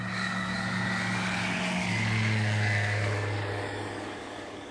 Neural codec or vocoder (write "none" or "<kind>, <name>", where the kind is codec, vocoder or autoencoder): codec, DAC